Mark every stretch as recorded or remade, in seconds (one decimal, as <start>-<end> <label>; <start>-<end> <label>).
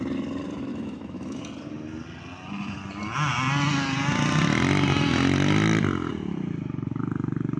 0.0-0.7 recorded; 0.7-1.4 remade; 1.4-7.6 recorded